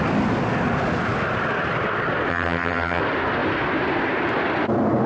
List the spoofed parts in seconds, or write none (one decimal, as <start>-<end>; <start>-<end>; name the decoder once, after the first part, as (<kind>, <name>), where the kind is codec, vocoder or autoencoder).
2.3-3.0 (vocoder, HiFi-GAN)